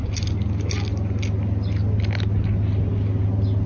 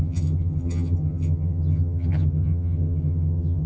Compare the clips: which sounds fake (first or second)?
second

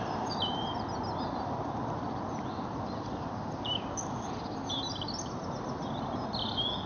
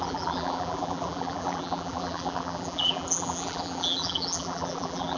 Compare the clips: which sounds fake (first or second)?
second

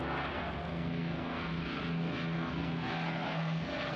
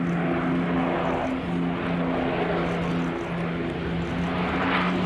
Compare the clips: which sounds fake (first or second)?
first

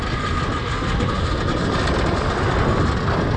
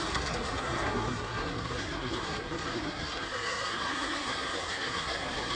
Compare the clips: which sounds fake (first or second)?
second